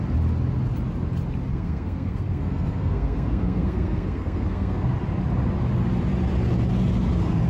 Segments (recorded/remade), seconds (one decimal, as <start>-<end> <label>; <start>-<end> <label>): 0.0-1.5 recorded; 1.5-4.9 remade; 4.9-7.5 recorded